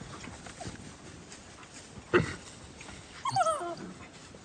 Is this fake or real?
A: real